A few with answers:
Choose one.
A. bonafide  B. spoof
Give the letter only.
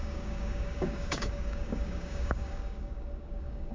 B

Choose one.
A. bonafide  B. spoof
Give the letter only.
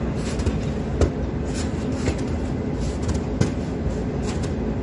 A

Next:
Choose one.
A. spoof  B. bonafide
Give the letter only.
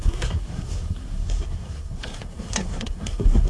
A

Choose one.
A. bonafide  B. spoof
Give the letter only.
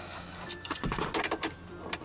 A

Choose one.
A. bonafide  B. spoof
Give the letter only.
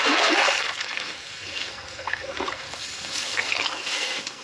B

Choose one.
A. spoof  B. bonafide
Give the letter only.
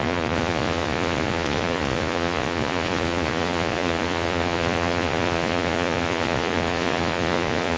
A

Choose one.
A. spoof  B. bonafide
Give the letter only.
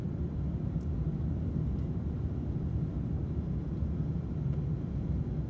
B